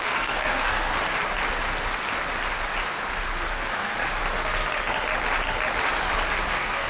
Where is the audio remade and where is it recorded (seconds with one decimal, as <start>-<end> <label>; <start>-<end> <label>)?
0.0-0.9 remade; 0.9-3.5 recorded; 3.5-3.9 remade; 3.9-6.5 recorded; 6.5-6.9 remade

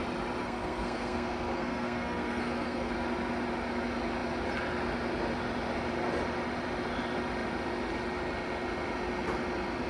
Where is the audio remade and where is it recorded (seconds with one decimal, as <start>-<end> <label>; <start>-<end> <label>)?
0.0-0.4 recorded; 0.4-2.9 remade; 2.9-9.9 recorded

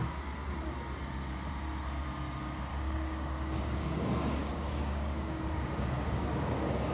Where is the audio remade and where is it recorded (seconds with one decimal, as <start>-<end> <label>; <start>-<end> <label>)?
0.0-2.7 recorded; 2.7-6.9 remade

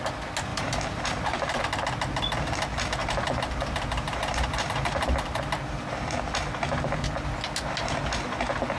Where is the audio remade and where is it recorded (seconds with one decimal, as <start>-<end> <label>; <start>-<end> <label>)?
0.0-0.5 recorded; 0.5-1.6 remade; 1.6-3.0 recorded; 3.0-5.4 remade; 5.4-8.8 recorded